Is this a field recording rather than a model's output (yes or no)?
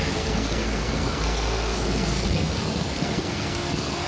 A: no